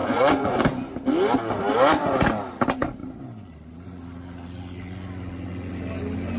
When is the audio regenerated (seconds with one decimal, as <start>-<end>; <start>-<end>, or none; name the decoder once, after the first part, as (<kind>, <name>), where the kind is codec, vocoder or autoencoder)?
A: 0.0-0.6 (vocoder, Vocos)